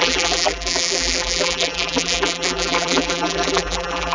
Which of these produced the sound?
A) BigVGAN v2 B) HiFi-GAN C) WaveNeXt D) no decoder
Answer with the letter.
A